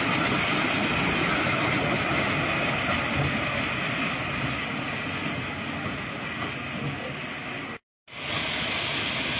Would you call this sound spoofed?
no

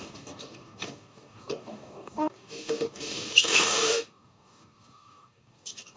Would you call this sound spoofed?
yes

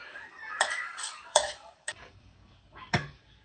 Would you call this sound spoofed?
yes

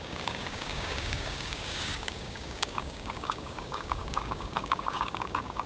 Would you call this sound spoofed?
yes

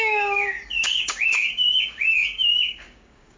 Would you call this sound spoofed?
yes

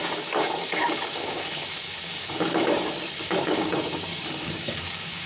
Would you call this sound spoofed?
yes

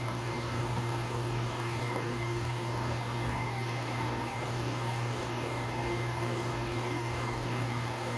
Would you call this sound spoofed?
yes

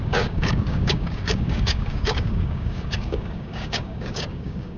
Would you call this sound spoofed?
yes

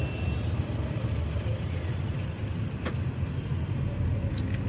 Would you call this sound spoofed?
no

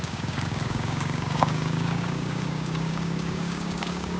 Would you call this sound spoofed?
yes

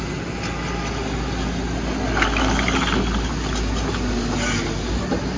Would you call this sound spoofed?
no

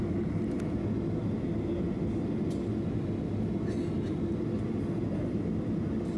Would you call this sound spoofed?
no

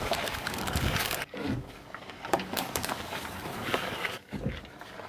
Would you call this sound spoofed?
yes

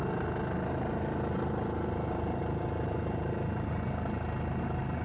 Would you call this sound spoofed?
no